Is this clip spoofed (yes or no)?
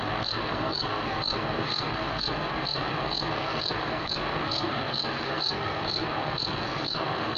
yes